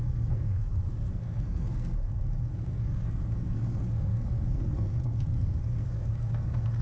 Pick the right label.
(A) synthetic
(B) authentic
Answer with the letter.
A